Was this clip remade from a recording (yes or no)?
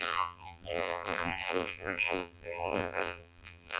yes